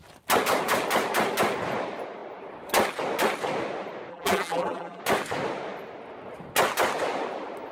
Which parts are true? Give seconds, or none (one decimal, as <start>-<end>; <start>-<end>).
0.0-4.1; 5.0-7.7